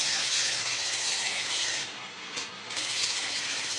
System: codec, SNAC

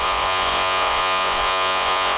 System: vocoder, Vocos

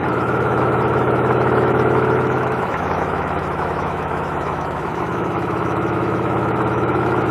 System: autoencoder, DAC-VAE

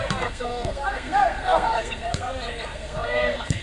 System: codec, SNAC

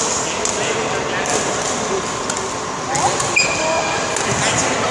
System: none